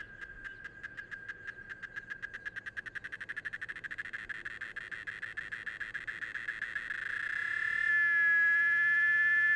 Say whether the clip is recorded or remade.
recorded